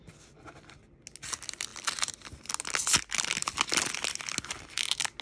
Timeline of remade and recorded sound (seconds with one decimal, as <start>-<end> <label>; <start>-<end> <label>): 0.0-5.2 recorded